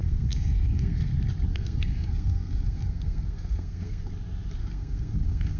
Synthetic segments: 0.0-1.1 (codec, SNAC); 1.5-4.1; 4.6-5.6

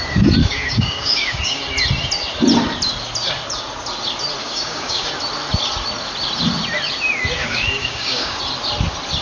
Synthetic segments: 0.4-1.6 (codec, DAC); 4.4-5.1; 7.4-8.4

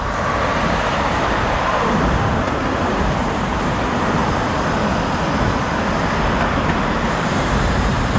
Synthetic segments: 0.0-4.2 (vocoder, BigVGAN v2); 6.4-8.2